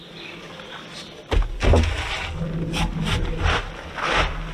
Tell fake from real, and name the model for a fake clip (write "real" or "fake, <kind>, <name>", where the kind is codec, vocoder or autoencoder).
real